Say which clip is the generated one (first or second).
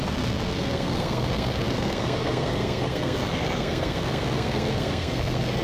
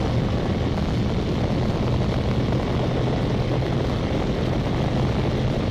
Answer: first